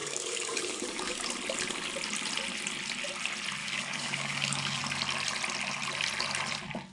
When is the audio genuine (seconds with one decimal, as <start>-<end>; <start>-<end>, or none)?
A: 1.3-3.6; 4.8-6.9